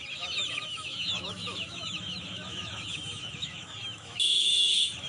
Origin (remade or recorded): remade